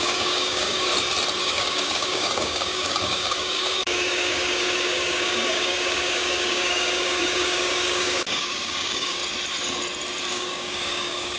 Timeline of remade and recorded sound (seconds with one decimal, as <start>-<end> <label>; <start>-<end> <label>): 0.0-0.9 remade; 0.9-1.4 recorded; 1.4-9.2 remade; 9.2-10.3 recorded; 10.3-11.4 remade